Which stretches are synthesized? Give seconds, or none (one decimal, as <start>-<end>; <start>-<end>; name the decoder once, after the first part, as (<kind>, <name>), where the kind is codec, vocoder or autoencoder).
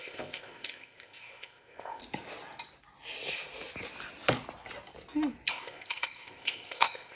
0.0-2.0 (codec, ZipCodec); 5.5-7.2